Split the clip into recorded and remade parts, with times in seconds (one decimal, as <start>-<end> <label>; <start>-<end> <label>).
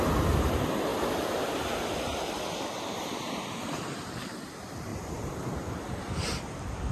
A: 0.0-4.9 recorded; 4.9-6.0 remade; 6.0-6.9 recorded